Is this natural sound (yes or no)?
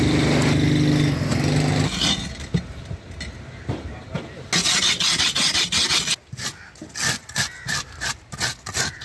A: yes